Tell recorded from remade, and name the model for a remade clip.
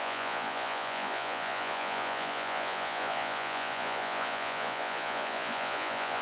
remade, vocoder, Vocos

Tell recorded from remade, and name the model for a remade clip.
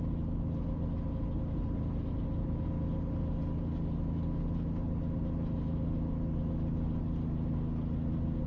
recorded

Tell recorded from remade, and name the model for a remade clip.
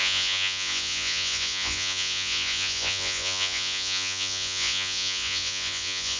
remade, vocoder, Vocos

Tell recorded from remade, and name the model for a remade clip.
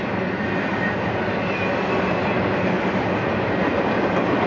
recorded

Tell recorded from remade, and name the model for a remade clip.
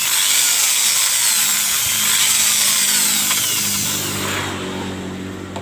recorded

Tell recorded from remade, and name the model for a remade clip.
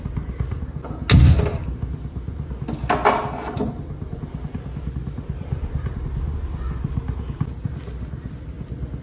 recorded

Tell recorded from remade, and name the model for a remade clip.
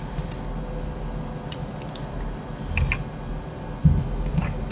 recorded